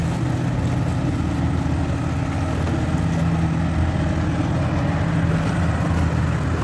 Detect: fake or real real